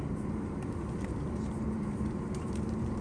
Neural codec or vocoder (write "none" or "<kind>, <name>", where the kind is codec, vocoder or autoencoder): vocoder, BigVGAN v2